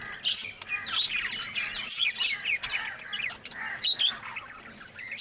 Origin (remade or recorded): recorded